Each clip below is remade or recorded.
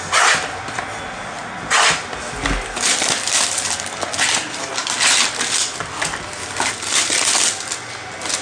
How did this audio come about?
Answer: recorded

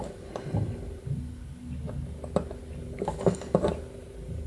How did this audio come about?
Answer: recorded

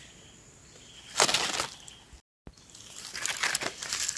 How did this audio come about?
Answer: recorded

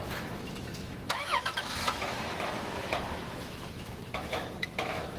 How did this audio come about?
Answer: remade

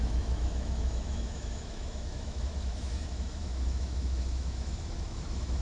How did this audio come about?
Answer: remade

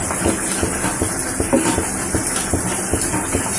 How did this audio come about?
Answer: recorded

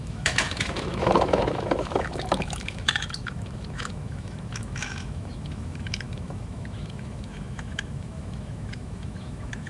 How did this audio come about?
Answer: remade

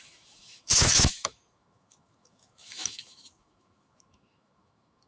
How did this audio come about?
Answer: remade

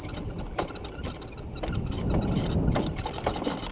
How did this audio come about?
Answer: recorded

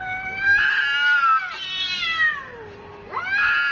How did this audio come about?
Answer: recorded